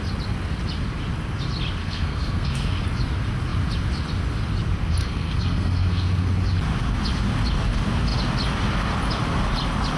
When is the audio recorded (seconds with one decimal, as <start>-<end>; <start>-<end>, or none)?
0.0-1.8; 2.8-5.0; 6.3-10.0